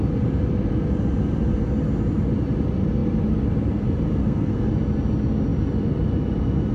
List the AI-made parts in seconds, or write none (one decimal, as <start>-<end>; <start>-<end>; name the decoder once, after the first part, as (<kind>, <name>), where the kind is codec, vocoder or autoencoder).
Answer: 4.2-4.7 (codec, SNAC)